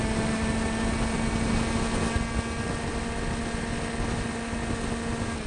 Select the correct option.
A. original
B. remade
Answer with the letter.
A